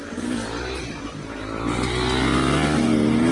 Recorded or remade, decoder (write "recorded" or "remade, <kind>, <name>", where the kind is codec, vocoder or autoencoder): recorded